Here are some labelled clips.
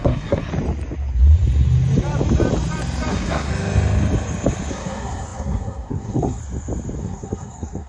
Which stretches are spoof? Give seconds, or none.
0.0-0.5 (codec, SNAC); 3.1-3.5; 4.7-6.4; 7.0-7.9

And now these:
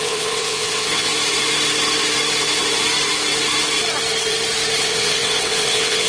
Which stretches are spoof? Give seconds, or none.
0.0-1.1 (vocoder, WaveNeXt); 4.8-6.1